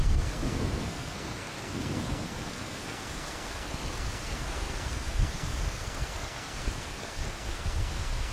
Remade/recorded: remade